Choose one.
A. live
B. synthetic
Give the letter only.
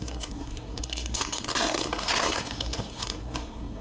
B